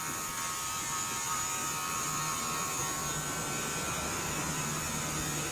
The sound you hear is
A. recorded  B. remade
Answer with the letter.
B